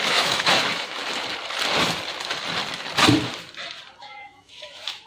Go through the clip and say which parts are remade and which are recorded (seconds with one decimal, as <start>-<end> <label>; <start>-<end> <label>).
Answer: 0.0-1.0 remade; 1.0-4.0 recorded; 4.0-5.1 remade